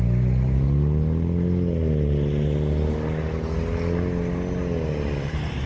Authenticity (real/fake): real